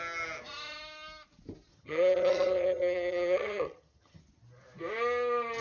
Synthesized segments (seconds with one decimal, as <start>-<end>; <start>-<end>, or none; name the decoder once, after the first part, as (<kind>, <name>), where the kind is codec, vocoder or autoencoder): 1.7-4.2 (vocoder, HiFi-GAN)